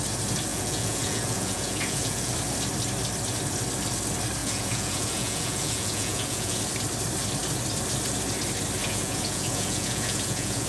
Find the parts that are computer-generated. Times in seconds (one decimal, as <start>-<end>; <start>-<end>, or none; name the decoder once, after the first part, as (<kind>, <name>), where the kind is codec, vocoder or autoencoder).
0.5-2.3 (vocoder, Vocos); 4.4-6.6; 8.8-10.7